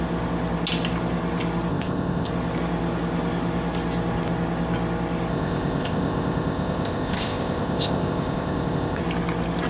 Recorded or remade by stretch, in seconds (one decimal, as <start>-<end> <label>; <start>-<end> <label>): 0.0-1.7 recorded; 1.7-2.3 remade; 2.3-5.3 recorded; 5.3-9.0 remade; 9.0-9.7 recorded